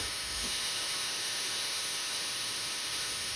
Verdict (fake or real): fake